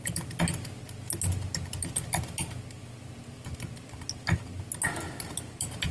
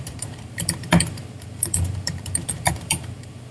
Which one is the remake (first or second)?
second